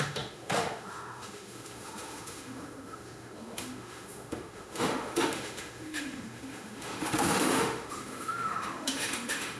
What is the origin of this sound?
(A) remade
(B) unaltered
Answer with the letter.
A